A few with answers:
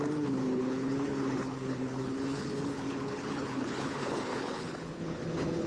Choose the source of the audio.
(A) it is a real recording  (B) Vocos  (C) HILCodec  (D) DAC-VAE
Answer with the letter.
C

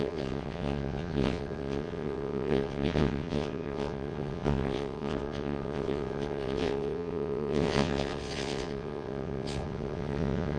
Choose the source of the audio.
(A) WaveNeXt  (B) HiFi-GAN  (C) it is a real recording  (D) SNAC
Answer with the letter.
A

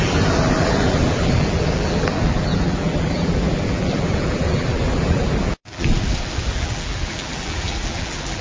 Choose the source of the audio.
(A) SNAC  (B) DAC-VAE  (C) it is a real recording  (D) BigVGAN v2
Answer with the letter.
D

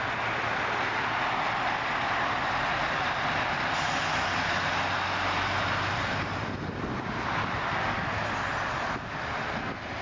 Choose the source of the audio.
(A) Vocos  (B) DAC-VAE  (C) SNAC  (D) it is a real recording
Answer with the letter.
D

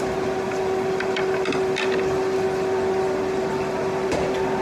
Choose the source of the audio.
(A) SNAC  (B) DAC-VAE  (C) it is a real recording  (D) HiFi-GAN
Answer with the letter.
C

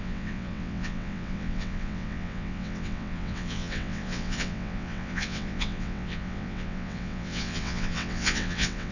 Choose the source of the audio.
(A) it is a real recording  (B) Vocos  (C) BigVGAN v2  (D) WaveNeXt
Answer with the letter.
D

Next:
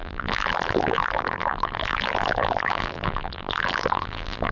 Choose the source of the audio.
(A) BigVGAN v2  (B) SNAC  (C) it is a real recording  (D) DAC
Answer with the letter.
A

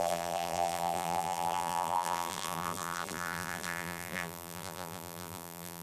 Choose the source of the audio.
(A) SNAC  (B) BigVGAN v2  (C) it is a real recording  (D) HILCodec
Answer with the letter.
B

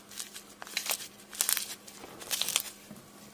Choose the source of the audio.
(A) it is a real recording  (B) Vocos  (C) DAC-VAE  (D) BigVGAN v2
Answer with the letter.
A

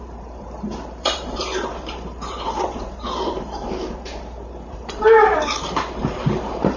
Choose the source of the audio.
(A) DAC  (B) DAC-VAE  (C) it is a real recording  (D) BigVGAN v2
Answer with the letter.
D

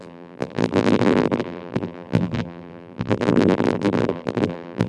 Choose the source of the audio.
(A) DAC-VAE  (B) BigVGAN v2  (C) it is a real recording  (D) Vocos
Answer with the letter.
B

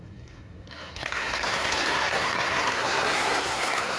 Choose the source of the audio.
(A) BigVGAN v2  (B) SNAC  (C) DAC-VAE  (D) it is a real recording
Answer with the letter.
B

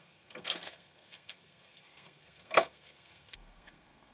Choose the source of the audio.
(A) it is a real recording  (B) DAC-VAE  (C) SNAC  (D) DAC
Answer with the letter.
C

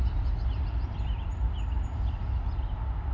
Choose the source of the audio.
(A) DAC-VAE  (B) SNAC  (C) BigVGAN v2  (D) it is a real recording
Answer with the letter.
D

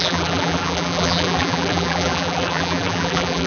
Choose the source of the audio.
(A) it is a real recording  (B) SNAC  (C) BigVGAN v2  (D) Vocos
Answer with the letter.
C